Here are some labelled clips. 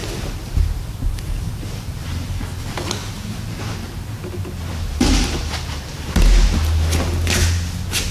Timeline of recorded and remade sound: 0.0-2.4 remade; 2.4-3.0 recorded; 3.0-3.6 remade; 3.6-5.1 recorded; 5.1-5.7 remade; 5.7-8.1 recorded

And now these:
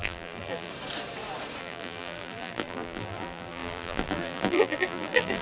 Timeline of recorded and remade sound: 0.0-0.7 remade; 0.7-1.6 recorded; 1.6-5.4 remade

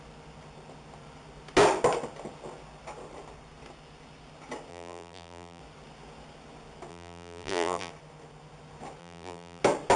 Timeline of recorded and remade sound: 0.0-4.7 recorded; 4.7-5.6 remade; 5.6-6.9 recorded; 6.9-7.9 remade; 7.9-9.0 recorded; 9.0-9.6 remade; 9.6-10.0 recorded

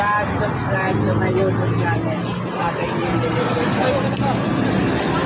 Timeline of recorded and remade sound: 0.0-2.6 recorded; 2.6-4.1 remade; 4.1-5.3 recorded

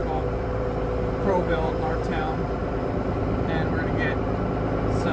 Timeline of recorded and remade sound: 0.0-2.2 remade; 2.2-2.6 recorded; 2.6-3.1 remade; 3.1-5.1 recorded

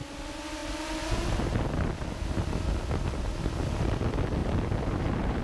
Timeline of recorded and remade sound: 0.0-4.4 recorded; 4.4-5.4 remade

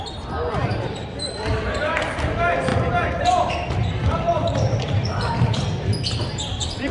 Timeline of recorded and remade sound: 0.0-2.7 remade; 2.7-3.5 recorded; 3.5-6.9 remade